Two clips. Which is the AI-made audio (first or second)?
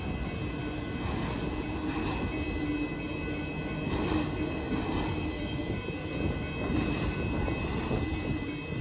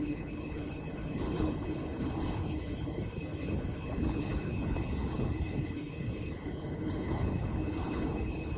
second